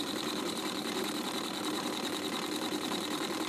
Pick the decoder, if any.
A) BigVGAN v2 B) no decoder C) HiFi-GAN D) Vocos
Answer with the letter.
A